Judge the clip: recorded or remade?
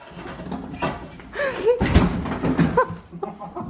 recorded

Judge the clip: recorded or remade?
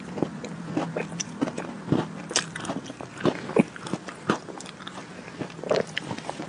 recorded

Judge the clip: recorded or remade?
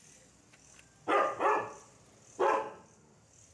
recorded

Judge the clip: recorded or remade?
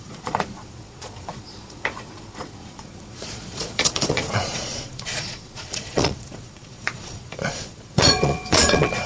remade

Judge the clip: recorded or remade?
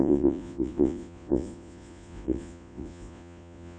remade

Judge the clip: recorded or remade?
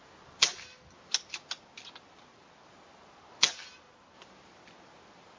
recorded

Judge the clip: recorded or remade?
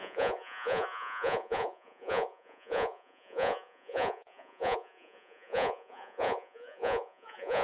remade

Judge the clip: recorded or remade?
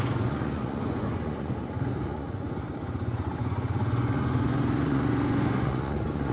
remade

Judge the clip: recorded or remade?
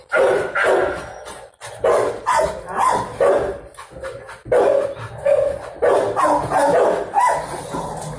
recorded